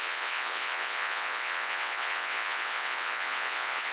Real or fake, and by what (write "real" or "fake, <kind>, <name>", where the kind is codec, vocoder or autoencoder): fake, vocoder, WaveNeXt